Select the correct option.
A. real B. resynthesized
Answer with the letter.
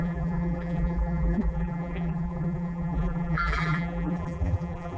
B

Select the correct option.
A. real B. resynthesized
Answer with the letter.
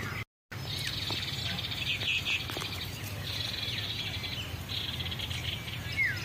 A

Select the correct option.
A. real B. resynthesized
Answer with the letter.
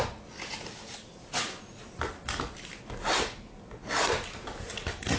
A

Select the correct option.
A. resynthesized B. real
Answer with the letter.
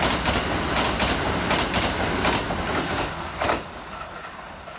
B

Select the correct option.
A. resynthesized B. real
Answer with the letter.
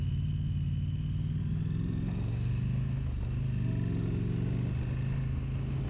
B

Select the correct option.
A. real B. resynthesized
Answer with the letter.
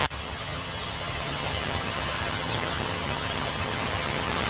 B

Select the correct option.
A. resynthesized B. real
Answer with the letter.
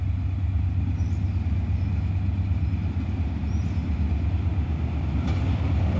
B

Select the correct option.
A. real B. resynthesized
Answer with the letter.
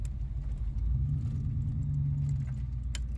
A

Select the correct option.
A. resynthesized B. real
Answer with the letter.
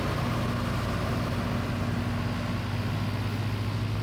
B